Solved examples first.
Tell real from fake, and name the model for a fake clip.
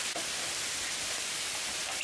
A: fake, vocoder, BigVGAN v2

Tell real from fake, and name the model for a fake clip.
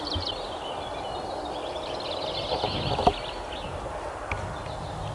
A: real